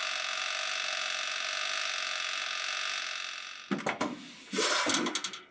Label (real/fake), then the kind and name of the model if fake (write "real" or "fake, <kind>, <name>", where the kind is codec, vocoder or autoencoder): real